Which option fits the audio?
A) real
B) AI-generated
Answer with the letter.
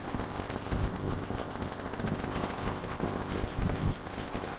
B